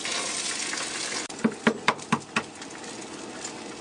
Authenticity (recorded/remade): recorded